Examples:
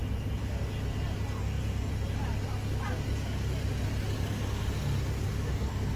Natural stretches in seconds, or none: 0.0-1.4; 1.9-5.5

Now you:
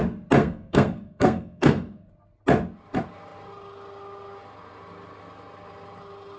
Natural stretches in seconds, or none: 0.0-0.4; 2.1-6.4

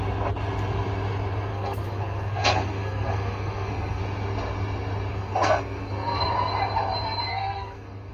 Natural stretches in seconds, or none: 0.0-1.5; 4.0-5.1; 6.2-7.3

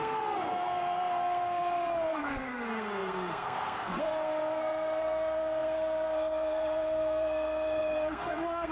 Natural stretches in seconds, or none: none

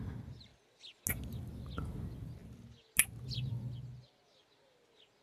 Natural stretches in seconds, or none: 0.0-5.2